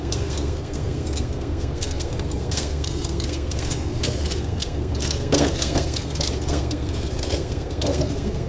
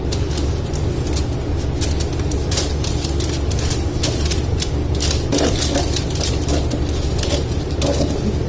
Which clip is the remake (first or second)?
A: first